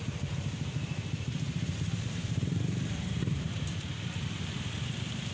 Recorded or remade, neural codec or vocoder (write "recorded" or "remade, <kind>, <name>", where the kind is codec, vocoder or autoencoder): remade, vocoder, BigVGAN v2